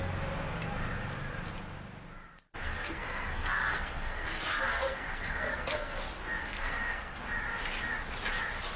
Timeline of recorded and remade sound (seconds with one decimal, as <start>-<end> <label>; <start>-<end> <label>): 0.0-2.6 recorded; 2.6-6.0 remade; 6.0-6.4 recorded; 6.4-7.2 remade; 7.2-8.8 recorded